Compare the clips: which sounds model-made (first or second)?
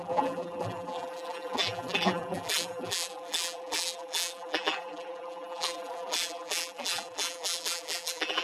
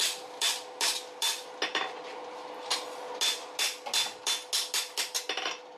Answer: first